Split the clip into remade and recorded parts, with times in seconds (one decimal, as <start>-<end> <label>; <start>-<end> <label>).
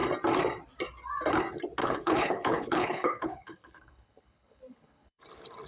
0.0-1.8 recorded; 1.8-5.2 remade; 5.2-5.7 recorded